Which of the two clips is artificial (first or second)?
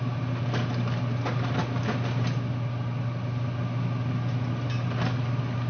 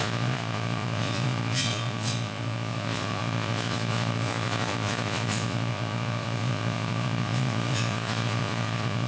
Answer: second